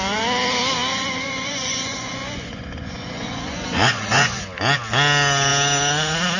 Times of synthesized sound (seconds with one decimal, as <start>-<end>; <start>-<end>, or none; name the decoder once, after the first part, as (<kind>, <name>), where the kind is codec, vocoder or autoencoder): 0.9-4.4 (vocoder, Vocos)

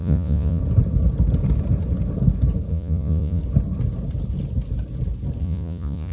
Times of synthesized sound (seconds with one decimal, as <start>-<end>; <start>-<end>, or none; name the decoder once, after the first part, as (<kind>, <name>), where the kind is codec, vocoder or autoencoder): 0.0-0.6 (vocoder, Vocos); 2.7-3.4; 5.4-6.1

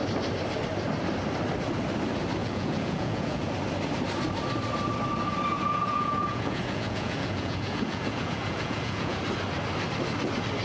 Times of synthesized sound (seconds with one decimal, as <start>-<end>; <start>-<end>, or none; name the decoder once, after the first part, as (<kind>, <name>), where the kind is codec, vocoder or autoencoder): 2.4-3.5 (vocoder, Vocos); 5.5-9.2

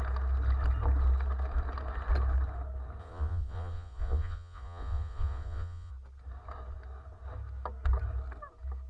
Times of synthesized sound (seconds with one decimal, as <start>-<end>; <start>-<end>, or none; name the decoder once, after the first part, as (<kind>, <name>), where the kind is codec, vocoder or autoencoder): 3.0-5.9 (vocoder, Vocos)

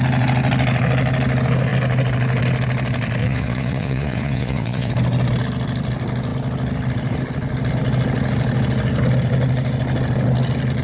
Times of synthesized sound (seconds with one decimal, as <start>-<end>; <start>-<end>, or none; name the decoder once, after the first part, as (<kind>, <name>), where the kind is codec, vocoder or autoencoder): 3.2-4.9 (vocoder, Vocos)